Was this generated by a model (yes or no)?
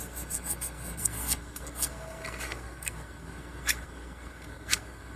yes